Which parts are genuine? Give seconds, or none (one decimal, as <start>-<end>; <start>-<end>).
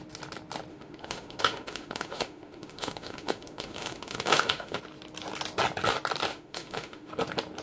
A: 0.0-0.7; 4.8-6.3; 7.1-7.6